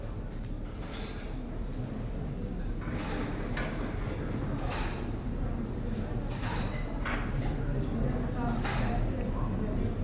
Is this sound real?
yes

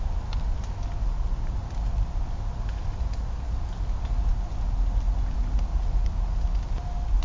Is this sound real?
yes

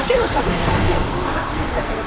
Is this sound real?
no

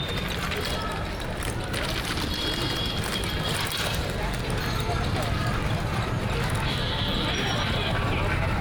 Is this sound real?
yes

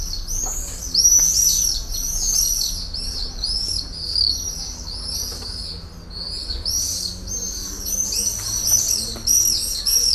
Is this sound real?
yes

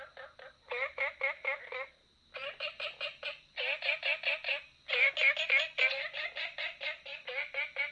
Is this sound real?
yes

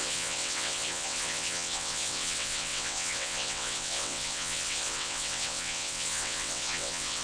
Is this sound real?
no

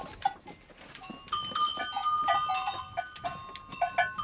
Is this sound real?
yes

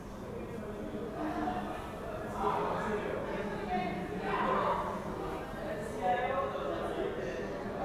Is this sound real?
yes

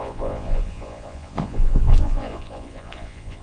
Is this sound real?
no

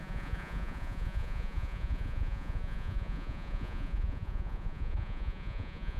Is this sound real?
no